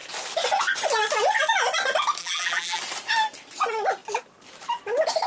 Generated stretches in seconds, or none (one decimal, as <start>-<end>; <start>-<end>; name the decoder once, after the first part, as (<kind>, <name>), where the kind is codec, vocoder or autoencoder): 2.2-2.8 (vocoder, BigVGAN v2)